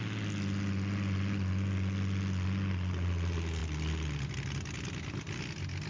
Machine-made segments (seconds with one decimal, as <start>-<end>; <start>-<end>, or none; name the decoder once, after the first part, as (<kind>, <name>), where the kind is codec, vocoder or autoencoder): none